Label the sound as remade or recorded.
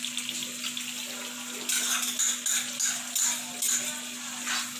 recorded